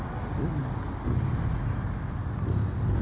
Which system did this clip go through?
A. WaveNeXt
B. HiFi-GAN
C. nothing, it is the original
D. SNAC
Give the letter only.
C